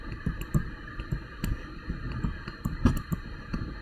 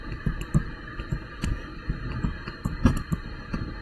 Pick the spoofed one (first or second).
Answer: first